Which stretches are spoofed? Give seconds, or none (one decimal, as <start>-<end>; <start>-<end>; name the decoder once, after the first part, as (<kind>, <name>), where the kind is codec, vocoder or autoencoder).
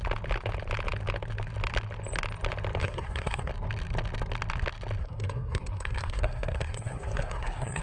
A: 2.8-3.5 (codec, SNAC); 5.0-7.8